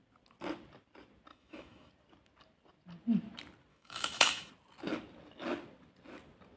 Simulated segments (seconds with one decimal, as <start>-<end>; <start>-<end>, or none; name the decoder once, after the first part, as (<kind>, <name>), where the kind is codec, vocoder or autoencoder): 1.3-1.9 (autoencoder, DAC-VAE); 3.7-4.5